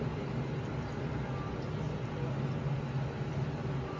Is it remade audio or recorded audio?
recorded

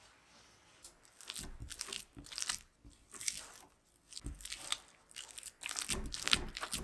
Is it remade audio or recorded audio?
recorded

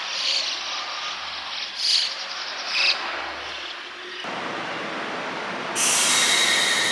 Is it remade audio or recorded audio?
recorded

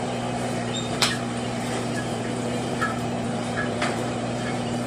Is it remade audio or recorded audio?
remade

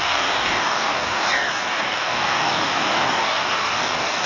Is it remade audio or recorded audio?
remade